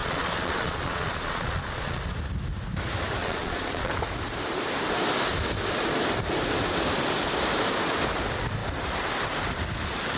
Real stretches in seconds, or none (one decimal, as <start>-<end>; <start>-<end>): 2.0-3.2; 3.9-10.2